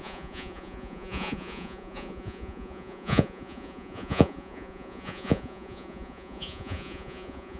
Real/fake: fake